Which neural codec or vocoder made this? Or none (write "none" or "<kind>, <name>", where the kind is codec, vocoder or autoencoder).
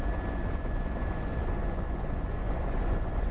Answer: vocoder, Vocos